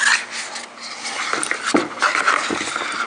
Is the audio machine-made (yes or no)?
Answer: no